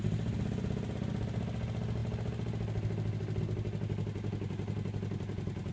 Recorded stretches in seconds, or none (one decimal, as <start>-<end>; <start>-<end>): 0.0-5.7